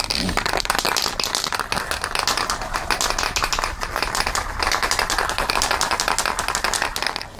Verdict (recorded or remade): recorded